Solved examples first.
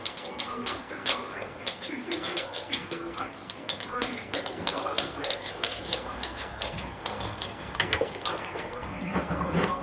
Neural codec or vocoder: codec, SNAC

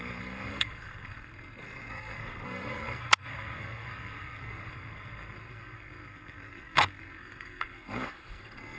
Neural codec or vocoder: codec, SNAC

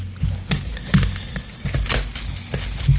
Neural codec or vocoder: none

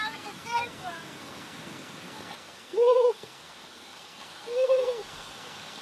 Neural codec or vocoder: codec, SNAC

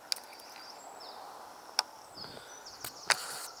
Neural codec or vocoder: none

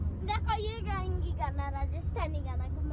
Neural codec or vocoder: none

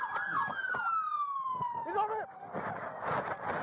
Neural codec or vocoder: none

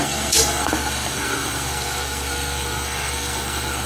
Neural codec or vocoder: codec, SNAC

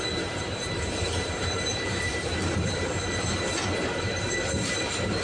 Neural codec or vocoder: vocoder, BigVGAN v2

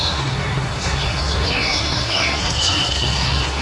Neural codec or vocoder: codec, SNAC